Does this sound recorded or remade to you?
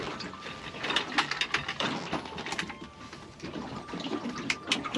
recorded